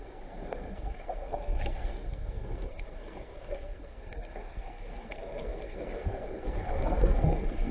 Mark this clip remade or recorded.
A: remade